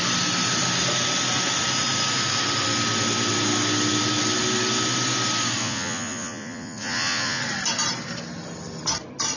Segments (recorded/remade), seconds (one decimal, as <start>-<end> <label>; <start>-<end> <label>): 0.0-5.6 recorded; 5.6-7.4 remade; 7.4-9.4 recorded